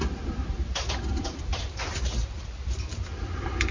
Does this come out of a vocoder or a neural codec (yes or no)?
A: no